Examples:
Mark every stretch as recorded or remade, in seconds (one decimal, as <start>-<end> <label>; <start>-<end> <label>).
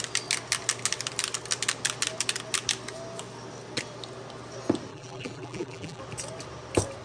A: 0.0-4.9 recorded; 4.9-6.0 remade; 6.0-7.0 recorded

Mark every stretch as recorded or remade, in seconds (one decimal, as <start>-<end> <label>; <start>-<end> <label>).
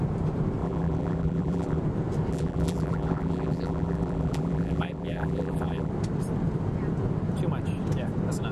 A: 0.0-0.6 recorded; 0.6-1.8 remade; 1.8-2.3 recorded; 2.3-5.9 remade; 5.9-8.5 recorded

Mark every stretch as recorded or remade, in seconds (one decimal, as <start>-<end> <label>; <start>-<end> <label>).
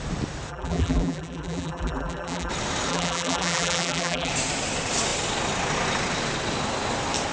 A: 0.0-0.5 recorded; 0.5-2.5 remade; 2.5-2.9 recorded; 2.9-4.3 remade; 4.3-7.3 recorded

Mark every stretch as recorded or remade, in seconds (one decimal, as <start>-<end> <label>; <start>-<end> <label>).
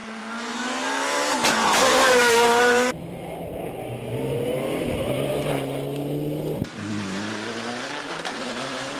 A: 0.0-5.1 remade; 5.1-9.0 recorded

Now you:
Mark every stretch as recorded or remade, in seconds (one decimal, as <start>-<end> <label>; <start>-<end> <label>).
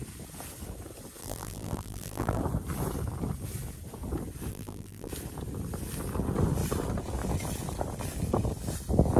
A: 0.0-1.2 recorded; 1.2-2.4 remade; 2.4-4.5 recorded; 4.5-5.1 remade; 5.1-9.2 recorded